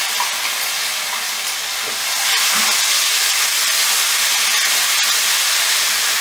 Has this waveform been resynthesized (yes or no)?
no